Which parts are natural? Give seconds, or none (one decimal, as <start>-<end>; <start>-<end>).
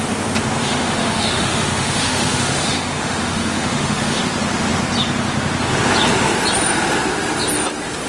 0.0-0.6; 4.2-8.1